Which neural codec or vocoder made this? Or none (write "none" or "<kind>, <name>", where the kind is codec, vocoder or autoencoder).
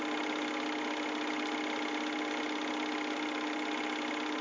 none